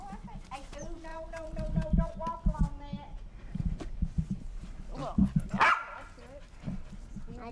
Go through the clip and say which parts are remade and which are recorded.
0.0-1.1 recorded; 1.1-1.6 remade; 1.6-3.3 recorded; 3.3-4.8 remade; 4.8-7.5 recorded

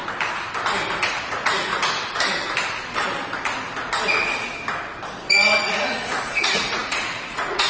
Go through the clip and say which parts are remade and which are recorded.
0.0-1.1 recorded; 1.1-1.7 remade; 1.7-5.6 recorded; 5.6-7.7 remade